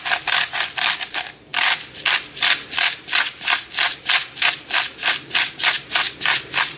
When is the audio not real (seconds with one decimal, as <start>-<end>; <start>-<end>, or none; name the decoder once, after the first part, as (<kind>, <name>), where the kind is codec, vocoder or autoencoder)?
none